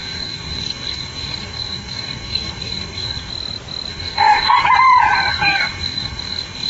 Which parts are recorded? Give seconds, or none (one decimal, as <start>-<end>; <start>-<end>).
3.3-3.9; 4.6-5.3